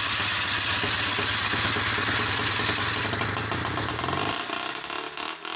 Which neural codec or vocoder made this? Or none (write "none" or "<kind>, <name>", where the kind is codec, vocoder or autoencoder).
none